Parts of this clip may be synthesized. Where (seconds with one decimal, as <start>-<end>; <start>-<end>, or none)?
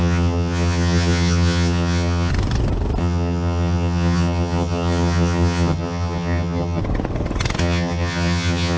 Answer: 0.0-2.3; 3.0-6.8; 7.6-8.8